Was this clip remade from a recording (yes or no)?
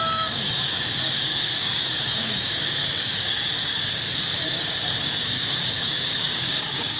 yes